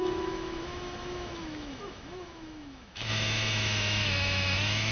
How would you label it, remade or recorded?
remade